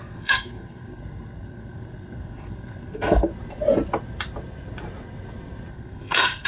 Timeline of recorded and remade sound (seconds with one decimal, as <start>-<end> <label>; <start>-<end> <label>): 0.0-3.3 remade; 3.3-5.7 recorded; 5.7-6.5 remade